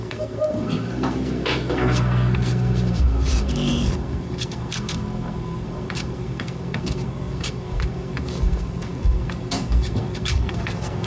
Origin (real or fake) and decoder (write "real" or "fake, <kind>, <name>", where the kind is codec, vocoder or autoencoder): fake, codec, SNAC